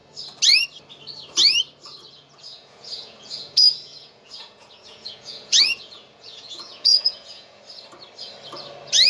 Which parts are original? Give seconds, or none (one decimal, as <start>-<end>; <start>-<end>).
0.0-2.1; 7.6-9.1